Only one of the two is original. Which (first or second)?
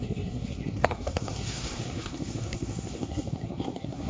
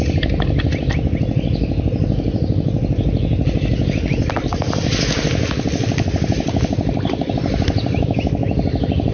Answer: second